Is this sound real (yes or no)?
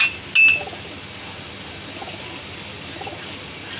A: yes